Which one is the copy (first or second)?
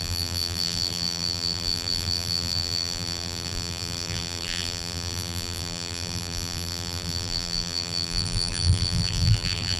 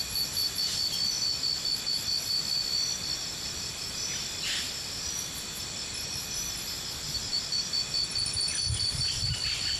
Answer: first